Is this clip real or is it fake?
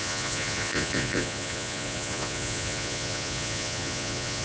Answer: fake